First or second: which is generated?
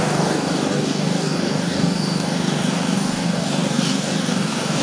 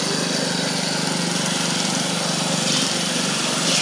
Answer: first